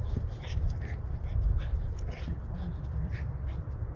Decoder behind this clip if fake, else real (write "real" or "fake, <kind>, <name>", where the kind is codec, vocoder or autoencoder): real